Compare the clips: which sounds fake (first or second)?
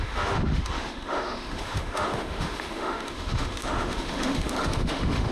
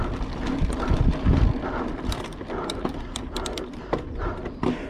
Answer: first